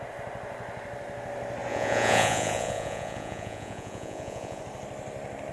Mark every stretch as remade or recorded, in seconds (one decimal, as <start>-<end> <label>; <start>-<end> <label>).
0.0-1.7 recorded; 1.7-4.6 remade; 4.6-5.5 recorded